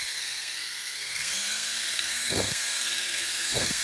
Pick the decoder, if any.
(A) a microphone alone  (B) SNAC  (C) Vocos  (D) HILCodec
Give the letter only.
B